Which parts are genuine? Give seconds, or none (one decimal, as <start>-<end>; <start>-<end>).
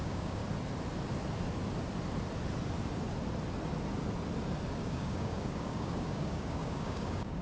0.4-4.8